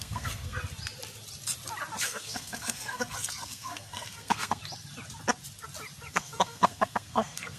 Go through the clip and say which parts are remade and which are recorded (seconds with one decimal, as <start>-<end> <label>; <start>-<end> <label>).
0.0-0.6 remade; 0.6-2.0 recorded; 2.0-4.6 remade; 4.6-6.1 recorded; 6.1-7.6 remade